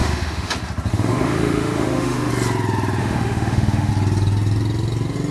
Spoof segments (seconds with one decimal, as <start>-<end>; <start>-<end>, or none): 0.0-0.5; 0.9-2.3; 3.0-3.9